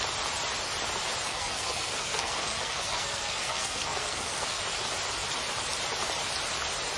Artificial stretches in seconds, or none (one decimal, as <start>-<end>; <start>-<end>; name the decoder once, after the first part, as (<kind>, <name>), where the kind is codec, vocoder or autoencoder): 1.3-4.6 (codec, SNAC)